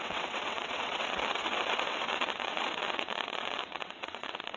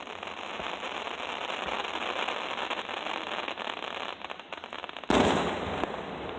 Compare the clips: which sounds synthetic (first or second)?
first